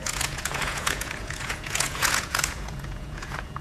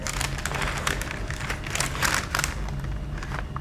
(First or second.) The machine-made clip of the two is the first